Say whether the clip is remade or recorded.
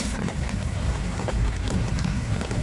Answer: remade